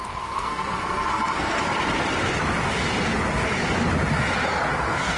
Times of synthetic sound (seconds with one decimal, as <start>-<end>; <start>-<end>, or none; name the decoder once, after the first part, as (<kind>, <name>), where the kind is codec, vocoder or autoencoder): 0.0-1.6 (codec, SNAC); 4.7-5.2